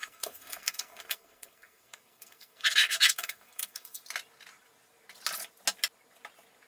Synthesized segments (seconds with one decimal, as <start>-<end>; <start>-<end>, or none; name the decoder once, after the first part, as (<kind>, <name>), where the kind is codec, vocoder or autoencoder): 0.0-4.0 (codec, SNAC)